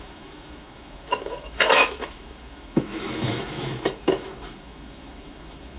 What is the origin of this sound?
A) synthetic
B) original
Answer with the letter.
A